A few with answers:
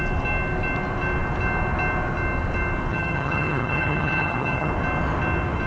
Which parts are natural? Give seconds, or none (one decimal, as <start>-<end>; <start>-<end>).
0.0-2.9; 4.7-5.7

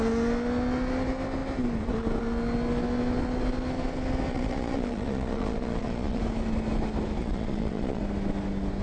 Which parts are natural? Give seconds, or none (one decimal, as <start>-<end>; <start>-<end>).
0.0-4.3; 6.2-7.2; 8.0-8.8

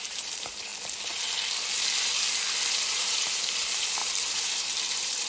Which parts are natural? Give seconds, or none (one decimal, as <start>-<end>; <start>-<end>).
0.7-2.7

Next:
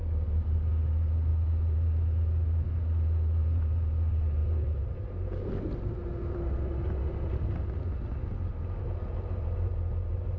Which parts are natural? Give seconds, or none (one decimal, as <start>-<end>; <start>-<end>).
0.0-10.4